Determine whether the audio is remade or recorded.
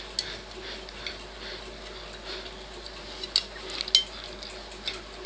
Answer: recorded